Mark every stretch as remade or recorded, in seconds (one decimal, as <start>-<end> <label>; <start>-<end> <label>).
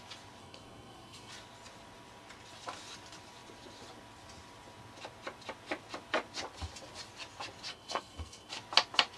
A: 0.0-0.4 recorded; 0.4-1.3 remade; 1.3-7.7 recorded; 7.7-8.5 remade; 8.5-9.2 recorded